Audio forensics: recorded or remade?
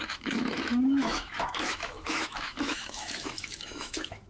remade